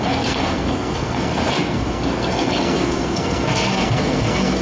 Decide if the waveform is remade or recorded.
remade